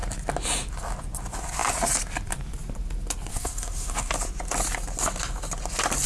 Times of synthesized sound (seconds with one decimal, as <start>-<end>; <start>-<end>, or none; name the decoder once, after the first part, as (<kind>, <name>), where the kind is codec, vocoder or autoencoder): 3.3-4.1 (codec, SNAC)